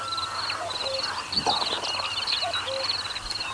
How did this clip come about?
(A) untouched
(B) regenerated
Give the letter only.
A